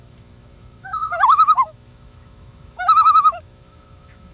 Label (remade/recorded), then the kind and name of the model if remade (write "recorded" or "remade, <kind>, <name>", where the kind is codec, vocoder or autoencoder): remade, autoencoder, DAC-VAE